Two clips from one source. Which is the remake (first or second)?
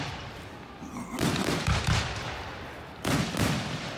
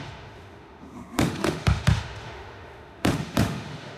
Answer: second